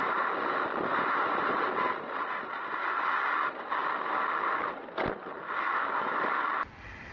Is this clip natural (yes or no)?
yes